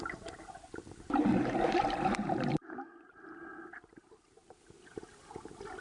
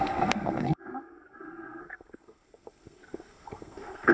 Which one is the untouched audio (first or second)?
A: first